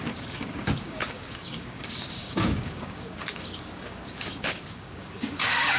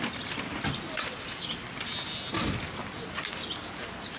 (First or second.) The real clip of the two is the second